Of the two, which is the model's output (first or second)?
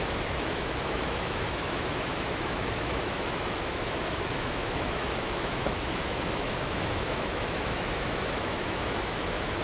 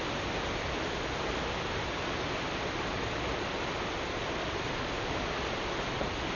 first